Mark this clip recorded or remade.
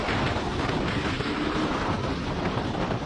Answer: recorded